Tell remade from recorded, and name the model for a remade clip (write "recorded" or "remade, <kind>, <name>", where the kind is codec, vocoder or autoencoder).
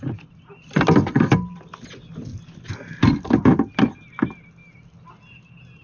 recorded